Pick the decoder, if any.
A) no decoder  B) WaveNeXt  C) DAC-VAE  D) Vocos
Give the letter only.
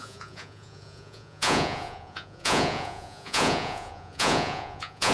D